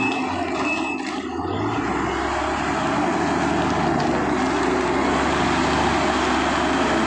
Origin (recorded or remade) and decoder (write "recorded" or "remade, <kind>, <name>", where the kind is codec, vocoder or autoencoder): recorded